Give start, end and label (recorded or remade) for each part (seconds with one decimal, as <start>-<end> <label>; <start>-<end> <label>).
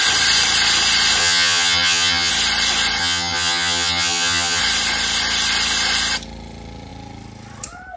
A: 0.0-1.2 recorded; 1.2-2.3 remade; 2.3-3.0 recorded; 3.0-4.6 remade; 4.6-8.0 recorded